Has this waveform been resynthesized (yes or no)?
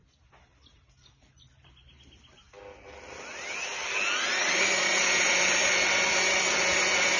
no